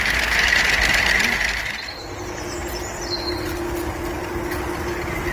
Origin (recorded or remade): recorded